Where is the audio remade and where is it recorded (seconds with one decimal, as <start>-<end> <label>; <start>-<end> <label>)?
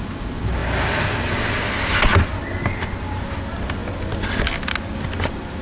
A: 0.0-5.6 recorded